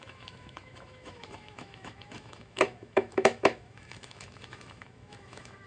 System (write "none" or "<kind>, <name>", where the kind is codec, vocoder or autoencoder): autoencoder, DAC-VAE